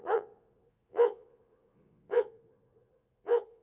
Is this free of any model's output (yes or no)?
no